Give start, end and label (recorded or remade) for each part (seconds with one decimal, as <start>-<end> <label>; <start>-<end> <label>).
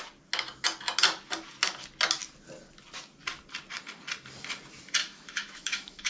0.0-5.0 recorded; 5.0-6.1 remade